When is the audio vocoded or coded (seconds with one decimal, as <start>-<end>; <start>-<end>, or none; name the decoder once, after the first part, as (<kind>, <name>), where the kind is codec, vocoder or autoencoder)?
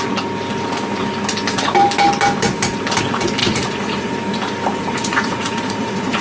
3.4-4.1 (vocoder, Vocos); 4.8-6.2